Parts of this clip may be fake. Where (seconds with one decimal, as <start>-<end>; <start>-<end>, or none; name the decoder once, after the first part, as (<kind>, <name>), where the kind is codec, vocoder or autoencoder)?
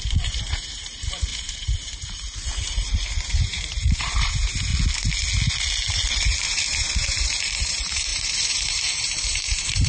0.0-4.7 (vocoder, BigVGAN v2); 6.1-9.9